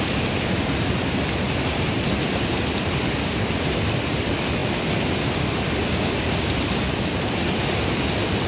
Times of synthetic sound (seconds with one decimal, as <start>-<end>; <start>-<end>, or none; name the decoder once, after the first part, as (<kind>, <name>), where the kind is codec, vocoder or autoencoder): none